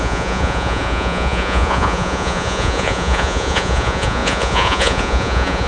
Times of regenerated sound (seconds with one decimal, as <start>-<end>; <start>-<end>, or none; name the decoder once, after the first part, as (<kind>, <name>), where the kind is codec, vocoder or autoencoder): 0.0-5.7 (vocoder, Vocos)